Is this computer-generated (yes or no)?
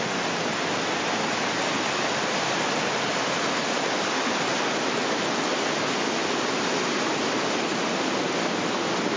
no